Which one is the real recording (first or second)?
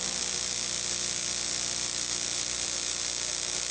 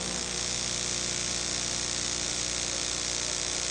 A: second